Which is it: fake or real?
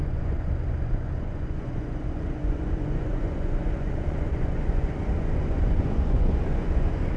fake